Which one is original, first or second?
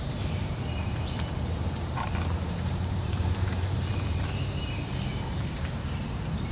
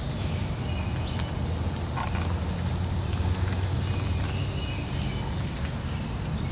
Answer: second